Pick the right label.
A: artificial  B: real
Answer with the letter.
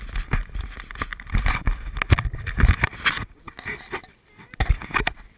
B